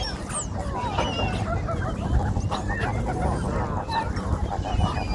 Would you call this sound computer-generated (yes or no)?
no